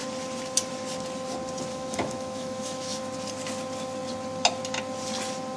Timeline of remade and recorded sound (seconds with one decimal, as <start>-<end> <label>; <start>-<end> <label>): 0.0-1.7 recorded; 1.7-3.0 remade; 3.0-5.6 recorded